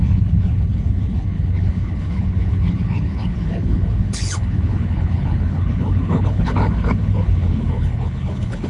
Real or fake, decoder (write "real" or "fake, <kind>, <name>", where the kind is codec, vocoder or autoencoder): fake, codec, HILCodec